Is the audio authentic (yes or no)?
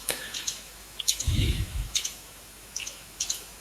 no